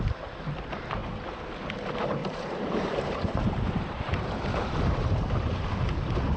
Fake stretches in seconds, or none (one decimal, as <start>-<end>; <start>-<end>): 2.2-5.7